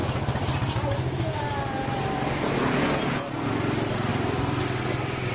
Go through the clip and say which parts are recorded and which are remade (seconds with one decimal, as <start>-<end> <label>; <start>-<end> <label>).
0.0-4.1 recorded; 4.1-4.6 remade; 4.6-5.3 recorded